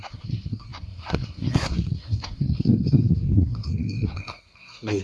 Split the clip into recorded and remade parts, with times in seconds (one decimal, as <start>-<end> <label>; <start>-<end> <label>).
0.0-5.0 remade